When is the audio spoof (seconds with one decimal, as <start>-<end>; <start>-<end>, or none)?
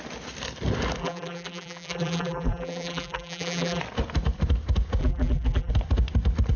1.0-3.8; 5.0-5.7